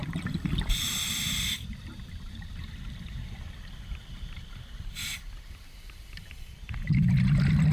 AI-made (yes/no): yes